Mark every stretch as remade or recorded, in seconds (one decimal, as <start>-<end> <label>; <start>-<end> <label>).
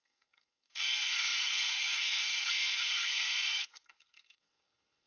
0.0-5.1 remade